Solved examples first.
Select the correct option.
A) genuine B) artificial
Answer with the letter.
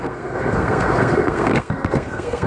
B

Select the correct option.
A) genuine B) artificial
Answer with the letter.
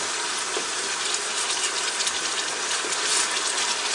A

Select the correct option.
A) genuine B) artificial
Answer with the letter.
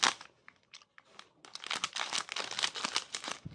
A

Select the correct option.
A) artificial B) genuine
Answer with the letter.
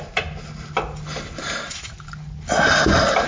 B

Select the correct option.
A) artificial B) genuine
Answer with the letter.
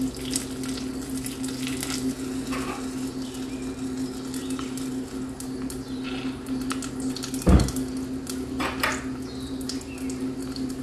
B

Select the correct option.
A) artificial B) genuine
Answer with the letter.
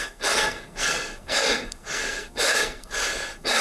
A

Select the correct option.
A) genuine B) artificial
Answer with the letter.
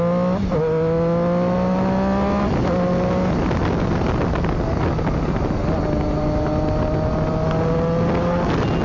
A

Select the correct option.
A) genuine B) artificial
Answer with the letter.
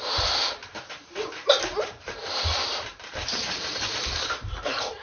B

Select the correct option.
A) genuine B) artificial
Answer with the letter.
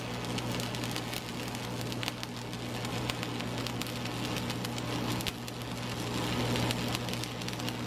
A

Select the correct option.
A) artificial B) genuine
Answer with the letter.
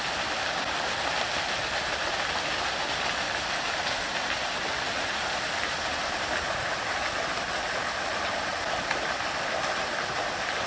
B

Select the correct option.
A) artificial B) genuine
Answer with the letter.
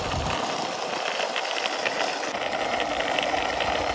B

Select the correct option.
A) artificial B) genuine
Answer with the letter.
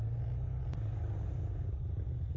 B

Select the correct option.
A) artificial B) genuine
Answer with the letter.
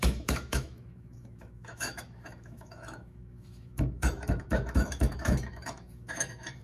A